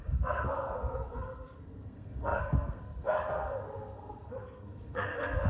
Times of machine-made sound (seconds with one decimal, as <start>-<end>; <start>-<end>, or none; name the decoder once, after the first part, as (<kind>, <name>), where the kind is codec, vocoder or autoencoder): 0.0-5.5 (codec, SNAC)